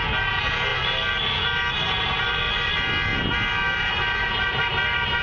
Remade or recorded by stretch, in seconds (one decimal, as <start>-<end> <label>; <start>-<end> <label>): 0.0-5.2 recorded

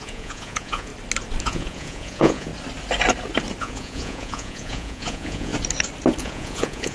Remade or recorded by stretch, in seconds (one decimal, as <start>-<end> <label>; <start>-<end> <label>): 0.0-0.9 remade; 0.9-1.4 recorded; 1.4-2.5 remade; 2.5-3.6 recorded; 3.6-5.5 remade; 5.5-6.2 recorded; 6.2-6.9 remade

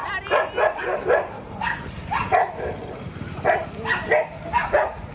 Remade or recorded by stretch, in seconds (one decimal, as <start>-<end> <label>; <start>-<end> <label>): 0.0-5.1 recorded

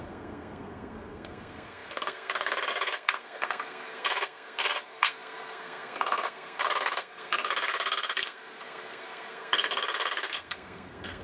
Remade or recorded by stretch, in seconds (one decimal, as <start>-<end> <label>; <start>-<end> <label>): 0.0-11.2 remade

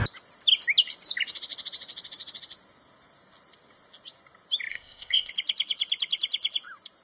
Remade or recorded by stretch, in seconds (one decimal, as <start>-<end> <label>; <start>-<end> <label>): 0.0-4.7 recorded; 4.7-5.3 remade; 5.3-7.0 recorded

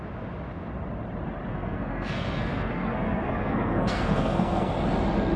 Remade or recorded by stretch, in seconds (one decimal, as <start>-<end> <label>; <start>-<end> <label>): 0.0-1.5 recorded; 1.5-4.7 remade; 4.7-5.4 recorded

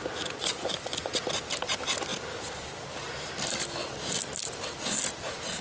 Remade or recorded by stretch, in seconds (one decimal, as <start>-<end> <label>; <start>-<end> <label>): 0.0-0.4 recorded; 0.4-1.1 remade; 1.1-5.6 recorded

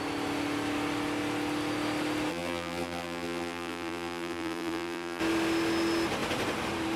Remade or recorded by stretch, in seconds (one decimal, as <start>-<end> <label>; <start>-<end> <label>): 0.0-2.3 recorded; 2.3-5.2 remade; 5.2-7.0 recorded